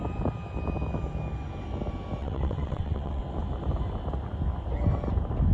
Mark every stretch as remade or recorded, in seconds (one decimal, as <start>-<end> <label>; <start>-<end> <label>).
0.0-2.2 recorded; 2.2-3.2 remade; 3.2-5.5 recorded